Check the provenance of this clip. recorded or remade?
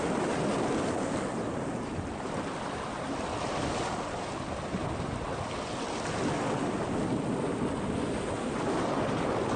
recorded